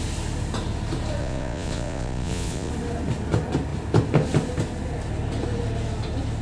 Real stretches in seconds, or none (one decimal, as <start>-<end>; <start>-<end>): 0.0-1.2; 2.7-6.4